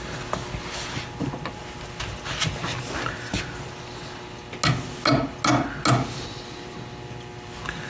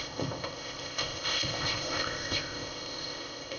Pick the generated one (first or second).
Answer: second